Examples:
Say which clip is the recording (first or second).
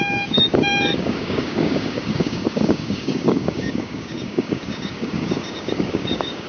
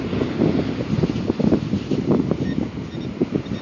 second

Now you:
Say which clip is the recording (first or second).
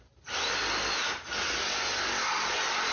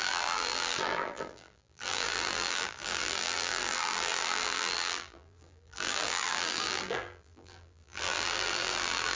first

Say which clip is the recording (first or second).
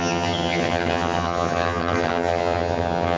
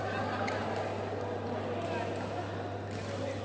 second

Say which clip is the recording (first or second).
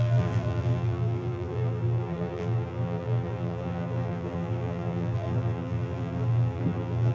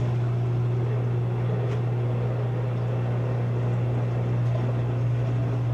second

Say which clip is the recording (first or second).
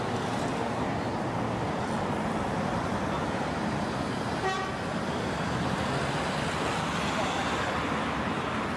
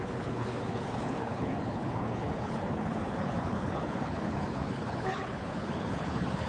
first